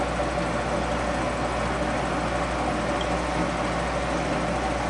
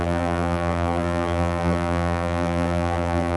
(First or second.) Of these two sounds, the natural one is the first